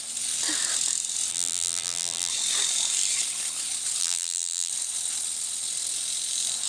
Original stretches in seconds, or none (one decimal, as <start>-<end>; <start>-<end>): 0.0-1.3; 2.3-4.0; 4.7-6.7